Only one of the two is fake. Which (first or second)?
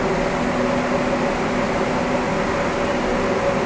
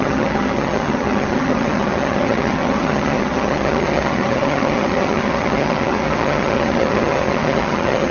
second